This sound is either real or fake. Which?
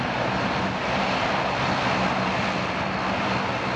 real